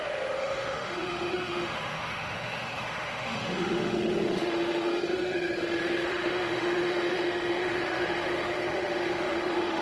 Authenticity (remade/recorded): remade